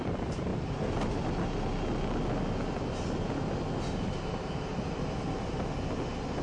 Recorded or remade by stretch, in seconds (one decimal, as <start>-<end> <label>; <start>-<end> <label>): 0.0-6.4 recorded